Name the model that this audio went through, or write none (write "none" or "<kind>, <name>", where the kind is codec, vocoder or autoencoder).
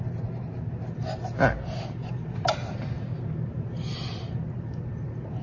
none